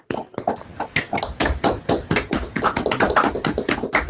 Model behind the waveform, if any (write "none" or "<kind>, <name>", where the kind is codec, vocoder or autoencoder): none